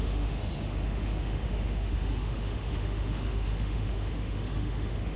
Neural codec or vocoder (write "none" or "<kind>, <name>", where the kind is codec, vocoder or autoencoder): autoencoder, DAC-VAE